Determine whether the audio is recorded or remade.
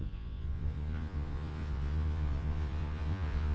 remade